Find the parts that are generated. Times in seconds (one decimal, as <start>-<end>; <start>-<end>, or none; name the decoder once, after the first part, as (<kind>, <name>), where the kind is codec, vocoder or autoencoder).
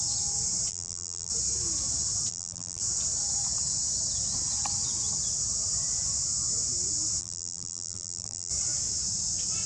0.7-1.3 (vocoder, BigVGAN v2); 2.3-2.8; 7.2-8.5